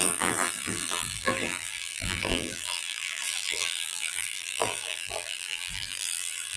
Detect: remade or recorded remade